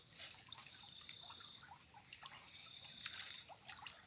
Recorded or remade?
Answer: recorded